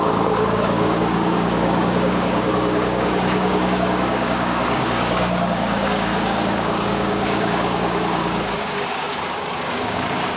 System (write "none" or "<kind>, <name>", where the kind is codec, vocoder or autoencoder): codec, DAC